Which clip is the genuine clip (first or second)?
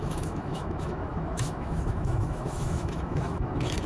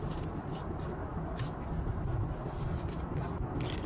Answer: second